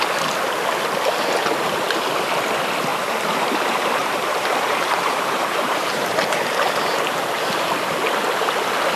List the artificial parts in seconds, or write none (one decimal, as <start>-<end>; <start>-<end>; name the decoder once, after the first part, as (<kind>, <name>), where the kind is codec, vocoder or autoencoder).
2.9-3.6 (vocoder, BigVGAN v2); 4.0-7.7